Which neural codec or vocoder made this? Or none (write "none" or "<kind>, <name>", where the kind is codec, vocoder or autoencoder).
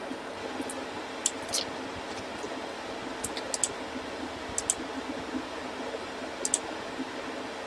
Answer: none